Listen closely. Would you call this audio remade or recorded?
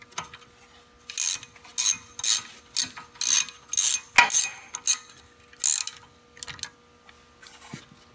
recorded